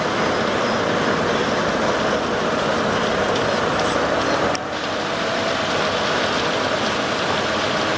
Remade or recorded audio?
remade